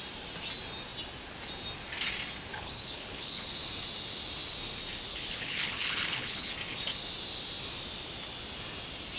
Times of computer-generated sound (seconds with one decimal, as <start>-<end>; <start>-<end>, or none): 2.5-3.5; 5.1-6.5